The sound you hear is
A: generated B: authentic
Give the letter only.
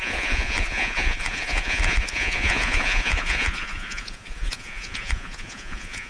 A